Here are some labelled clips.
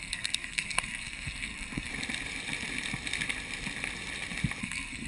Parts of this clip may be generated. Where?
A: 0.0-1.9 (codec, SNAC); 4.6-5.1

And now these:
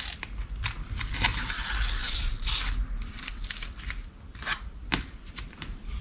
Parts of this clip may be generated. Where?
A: 2.0-2.6 (vocoder, BigVGAN v2); 4.3-4.8

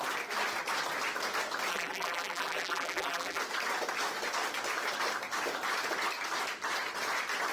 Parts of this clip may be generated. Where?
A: 1.7-3.4 (vocoder, BigVGAN v2)

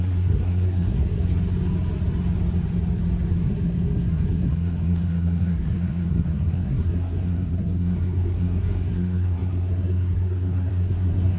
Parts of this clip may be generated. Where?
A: 0.0-1.2 (codec, SNAC); 3.3-11.4

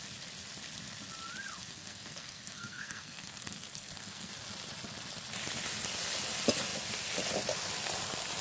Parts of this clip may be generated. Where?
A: 1.6-4.3 (codec, SNAC)

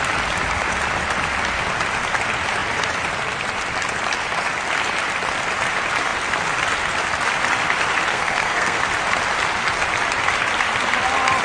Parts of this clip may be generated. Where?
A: 8.1-8.8 (codec, SNAC)

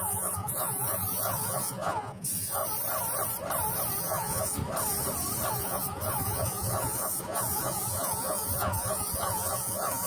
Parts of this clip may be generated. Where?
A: 0.0-2.6 (vocoder, Vocos); 4.0-4.6; 5.5-10.1

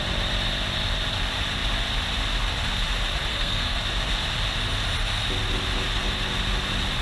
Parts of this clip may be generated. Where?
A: 3.3-3.8 (codec, SNAC)